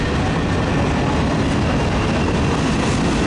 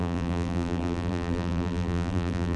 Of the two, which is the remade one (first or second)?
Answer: second